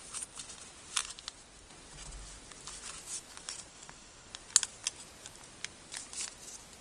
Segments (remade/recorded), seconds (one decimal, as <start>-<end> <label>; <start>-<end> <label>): 0.0-3.7 recorded; 3.7-4.3 remade; 4.3-6.8 recorded